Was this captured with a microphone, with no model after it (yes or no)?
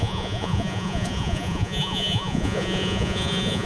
no